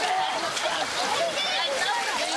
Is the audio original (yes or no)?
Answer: yes